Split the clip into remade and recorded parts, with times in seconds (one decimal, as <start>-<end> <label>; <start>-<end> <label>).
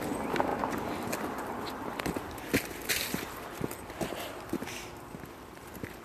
0.0-6.0 recorded